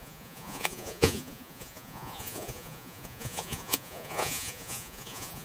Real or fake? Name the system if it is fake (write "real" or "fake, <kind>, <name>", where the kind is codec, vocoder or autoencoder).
fake, vocoder, Vocos